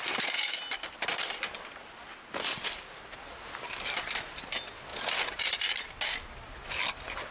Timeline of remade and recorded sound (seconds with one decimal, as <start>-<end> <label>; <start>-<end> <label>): 0.0-7.3 recorded